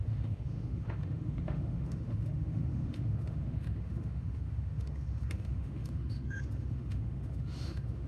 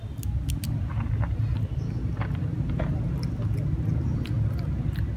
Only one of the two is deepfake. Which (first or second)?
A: first